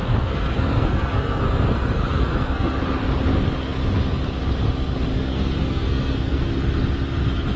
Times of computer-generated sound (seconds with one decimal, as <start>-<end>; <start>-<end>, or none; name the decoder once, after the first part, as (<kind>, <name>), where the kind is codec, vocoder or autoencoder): 0.0-2.8 (codec, SNAC); 5.1-6.5